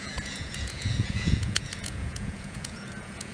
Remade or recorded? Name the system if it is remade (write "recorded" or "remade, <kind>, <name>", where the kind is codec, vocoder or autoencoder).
remade, vocoder, Vocos